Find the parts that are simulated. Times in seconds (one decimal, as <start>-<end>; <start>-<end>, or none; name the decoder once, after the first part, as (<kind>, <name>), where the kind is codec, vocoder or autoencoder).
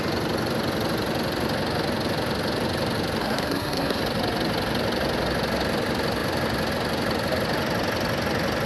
3.2-4.0 (codec, SNAC)